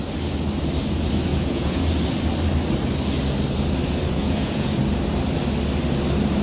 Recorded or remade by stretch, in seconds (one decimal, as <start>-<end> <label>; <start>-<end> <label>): 0.0-1.3 recorded; 1.3-1.8 remade; 1.8-4.2 recorded; 4.2-4.8 remade; 4.8-6.4 recorded